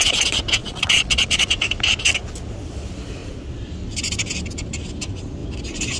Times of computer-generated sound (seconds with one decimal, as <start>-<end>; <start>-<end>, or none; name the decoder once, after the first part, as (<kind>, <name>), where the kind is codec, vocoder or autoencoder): 0.6-1.5 (vocoder, Vocos)